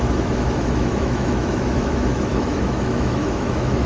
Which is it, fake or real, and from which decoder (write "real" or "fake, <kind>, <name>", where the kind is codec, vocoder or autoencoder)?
fake, autoencoder, DAC-VAE